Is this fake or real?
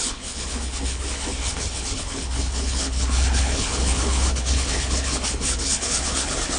fake